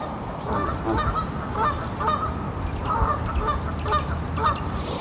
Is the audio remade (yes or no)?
yes